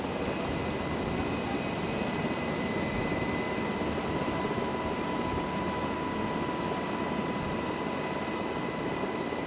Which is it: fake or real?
real